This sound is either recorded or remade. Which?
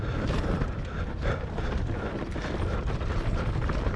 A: recorded